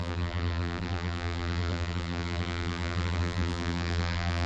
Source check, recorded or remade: remade